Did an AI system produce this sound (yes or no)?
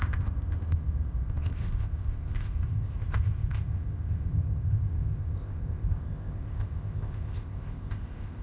yes